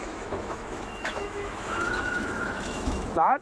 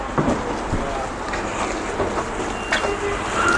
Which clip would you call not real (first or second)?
first